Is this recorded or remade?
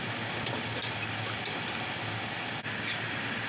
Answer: recorded